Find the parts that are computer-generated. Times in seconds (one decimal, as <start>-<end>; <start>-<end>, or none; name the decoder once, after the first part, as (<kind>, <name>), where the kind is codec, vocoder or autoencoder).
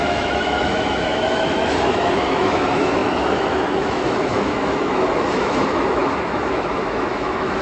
0.0-7.6 (autoencoder, DAC-VAE)